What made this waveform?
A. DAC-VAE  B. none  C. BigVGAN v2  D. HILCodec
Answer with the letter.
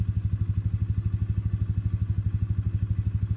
B